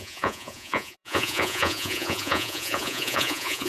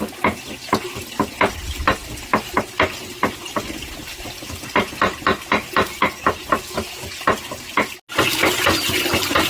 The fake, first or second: first